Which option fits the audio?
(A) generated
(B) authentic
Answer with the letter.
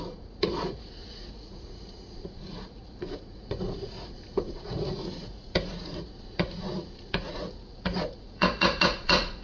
A